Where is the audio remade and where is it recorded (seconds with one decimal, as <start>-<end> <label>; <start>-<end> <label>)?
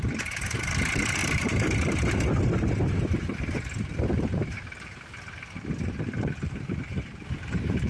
0.0-7.9 recorded